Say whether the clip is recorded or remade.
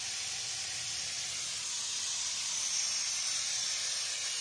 recorded